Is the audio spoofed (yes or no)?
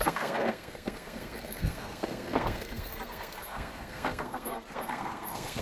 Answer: yes